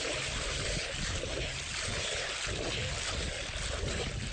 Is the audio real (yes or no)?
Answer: yes